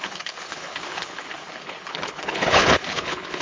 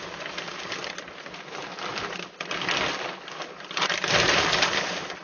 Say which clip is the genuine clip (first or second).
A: second